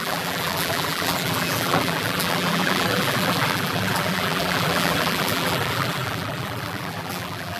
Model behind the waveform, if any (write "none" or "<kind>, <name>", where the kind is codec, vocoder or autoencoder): vocoder, BigVGAN v2